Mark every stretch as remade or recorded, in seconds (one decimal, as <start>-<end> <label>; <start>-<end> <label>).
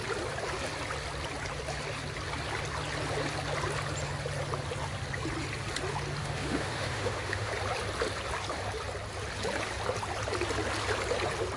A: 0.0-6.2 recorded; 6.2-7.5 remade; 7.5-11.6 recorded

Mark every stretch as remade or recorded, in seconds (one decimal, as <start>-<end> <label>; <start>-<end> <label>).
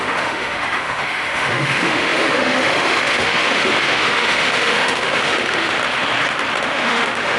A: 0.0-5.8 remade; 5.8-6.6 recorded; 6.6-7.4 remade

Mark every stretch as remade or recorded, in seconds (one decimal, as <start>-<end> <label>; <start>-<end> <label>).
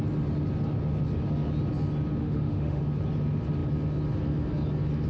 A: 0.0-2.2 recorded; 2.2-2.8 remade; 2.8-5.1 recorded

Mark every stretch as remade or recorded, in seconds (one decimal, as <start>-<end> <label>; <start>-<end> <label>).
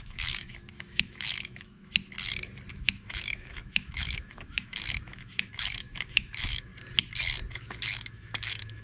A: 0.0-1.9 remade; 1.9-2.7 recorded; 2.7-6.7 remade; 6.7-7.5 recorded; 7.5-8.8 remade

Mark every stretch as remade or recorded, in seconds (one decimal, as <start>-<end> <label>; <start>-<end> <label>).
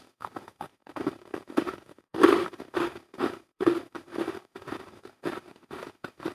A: 0.0-6.3 remade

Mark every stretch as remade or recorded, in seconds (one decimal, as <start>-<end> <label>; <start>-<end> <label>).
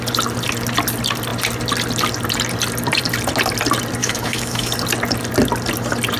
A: 0.0-4.0 recorded; 4.0-4.7 remade; 4.7-6.2 recorded